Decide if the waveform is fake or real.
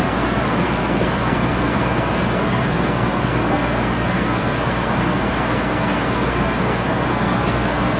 fake